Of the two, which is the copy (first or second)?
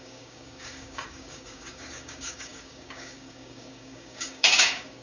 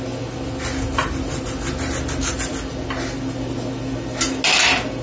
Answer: first